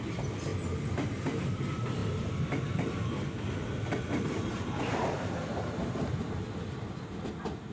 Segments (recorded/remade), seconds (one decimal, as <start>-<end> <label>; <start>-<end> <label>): 0.0-7.7 recorded